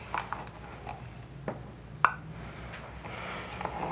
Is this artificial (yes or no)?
no